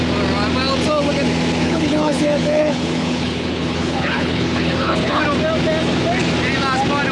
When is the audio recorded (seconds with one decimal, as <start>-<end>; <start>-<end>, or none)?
0.0-1.6; 5.2-7.1